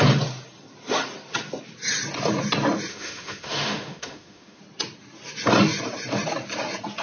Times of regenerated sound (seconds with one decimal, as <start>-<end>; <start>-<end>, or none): 2.9-4.6